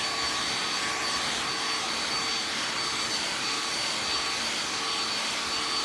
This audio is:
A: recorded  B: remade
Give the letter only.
A